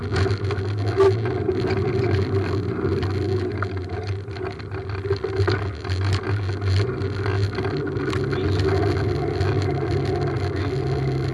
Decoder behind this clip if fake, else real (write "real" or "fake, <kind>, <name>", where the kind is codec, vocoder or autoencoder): real